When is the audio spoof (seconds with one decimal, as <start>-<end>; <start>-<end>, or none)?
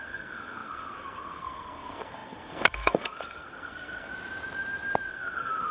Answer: 0.0-4.1; 5.1-5.7